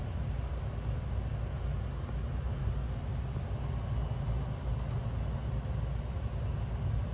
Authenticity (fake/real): real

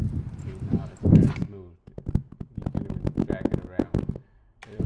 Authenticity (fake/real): fake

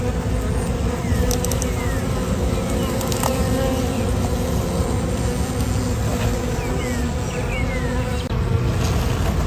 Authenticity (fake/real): real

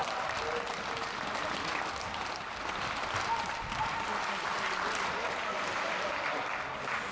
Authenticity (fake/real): real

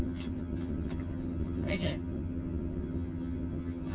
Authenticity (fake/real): fake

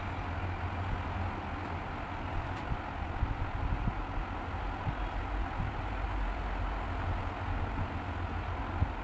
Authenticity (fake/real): real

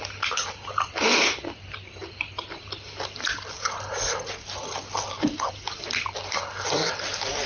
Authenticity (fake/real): real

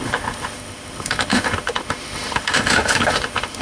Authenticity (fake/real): fake